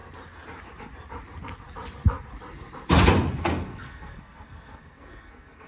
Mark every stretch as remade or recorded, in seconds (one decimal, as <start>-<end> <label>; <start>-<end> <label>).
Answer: 0.0-3.4 recorded; 3.4-5.7 remade